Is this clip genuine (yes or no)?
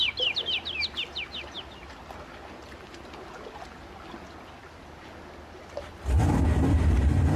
yes